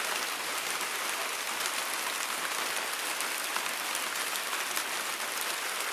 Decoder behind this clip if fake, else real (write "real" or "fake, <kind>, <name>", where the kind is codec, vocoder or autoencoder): real